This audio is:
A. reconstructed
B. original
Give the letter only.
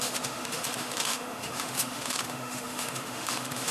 A